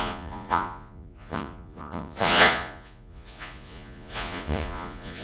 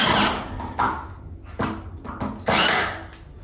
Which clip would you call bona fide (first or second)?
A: second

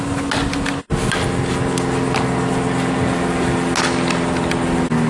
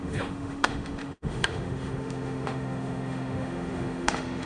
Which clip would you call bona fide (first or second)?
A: first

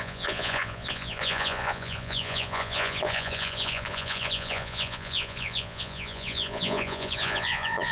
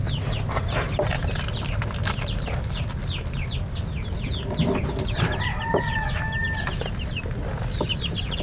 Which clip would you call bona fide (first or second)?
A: second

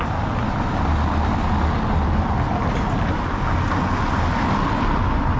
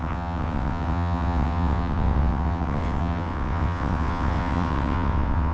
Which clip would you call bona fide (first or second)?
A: first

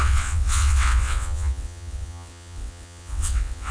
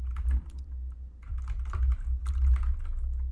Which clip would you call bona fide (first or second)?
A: second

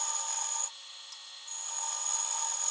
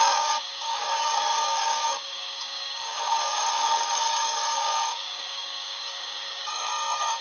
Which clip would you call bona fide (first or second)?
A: first